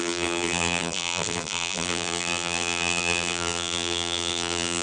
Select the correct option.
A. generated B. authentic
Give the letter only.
A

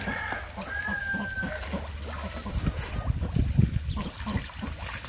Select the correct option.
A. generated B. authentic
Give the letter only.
B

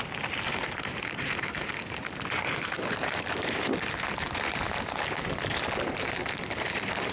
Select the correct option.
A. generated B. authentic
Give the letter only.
A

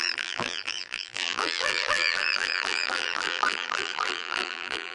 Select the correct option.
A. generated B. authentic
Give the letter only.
A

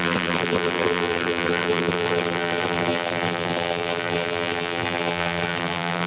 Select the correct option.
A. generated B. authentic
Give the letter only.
A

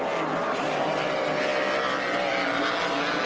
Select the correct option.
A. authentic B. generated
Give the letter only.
A